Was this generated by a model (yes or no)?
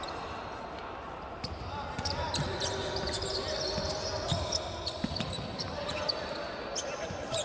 no